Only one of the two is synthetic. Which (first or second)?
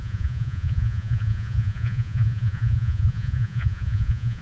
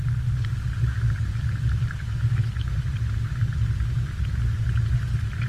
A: first